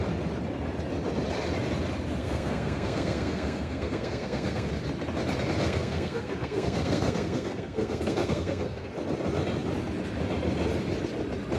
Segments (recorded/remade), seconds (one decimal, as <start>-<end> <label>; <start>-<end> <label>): 0.0-2.2 recorded; 2.2-4.7 remade; 4.7-5.6 recorded; 5.6-8.9 remade; 8.9-11.6 recorded